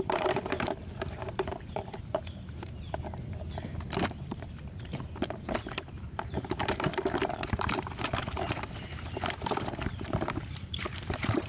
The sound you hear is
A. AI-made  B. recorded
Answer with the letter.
A